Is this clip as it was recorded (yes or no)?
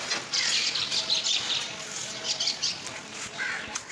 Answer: yes